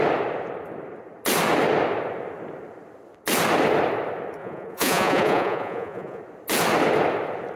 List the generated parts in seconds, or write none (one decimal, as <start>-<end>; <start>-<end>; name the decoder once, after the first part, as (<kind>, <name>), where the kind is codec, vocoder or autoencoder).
4.4-6.2 (vocoder, Vocos)